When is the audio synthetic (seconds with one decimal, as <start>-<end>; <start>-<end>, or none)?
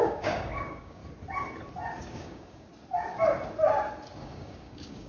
0.0-1.0; 2.0-2.7; 4.2-5.1